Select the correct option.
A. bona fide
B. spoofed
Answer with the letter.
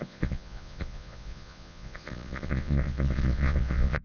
B